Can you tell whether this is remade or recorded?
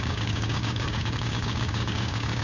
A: remade